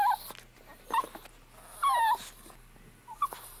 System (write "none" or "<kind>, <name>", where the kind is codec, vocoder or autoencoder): none